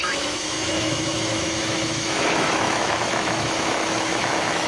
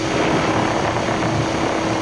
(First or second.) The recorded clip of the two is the second